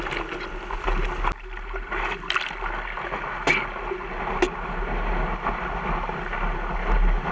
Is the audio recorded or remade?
recorded